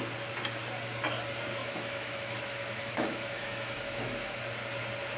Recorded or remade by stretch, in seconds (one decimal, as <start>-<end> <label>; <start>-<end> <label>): 0.0-1.6 recorded; 1.6-4.4 remade; 4.4-5.2 recorded